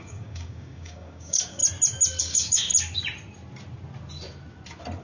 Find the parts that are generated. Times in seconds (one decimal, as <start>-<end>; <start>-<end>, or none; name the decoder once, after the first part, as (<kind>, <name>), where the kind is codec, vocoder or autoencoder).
0.0-1.6 (codec, DAC); 2.2-2.7